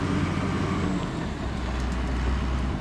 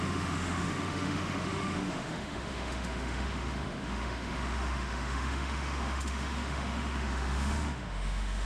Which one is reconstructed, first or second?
second